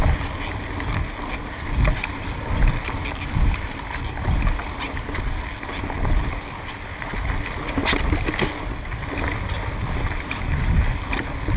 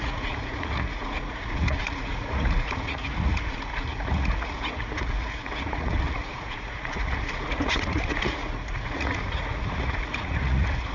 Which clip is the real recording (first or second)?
first